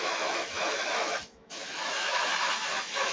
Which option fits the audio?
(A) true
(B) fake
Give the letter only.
B